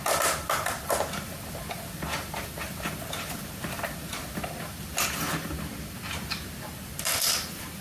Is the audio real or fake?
real